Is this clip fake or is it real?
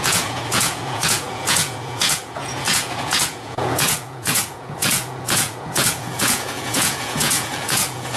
fake